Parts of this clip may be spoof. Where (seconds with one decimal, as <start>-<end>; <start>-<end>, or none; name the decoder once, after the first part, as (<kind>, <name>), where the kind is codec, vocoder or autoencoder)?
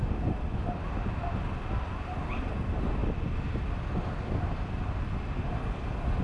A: none